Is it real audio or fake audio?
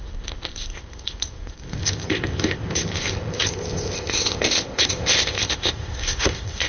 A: fake